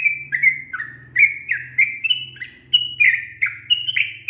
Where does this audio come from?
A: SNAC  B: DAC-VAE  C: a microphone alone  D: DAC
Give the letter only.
C